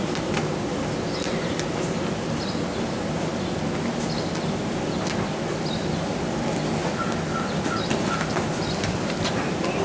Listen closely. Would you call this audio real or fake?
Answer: real